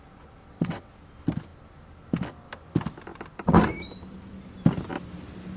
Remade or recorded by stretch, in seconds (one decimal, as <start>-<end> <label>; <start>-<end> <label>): 0.0-0.4 recorded; 0.4-0.9 remade; 0.9-5.6 recorded